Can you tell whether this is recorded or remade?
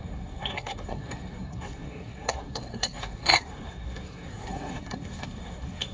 remade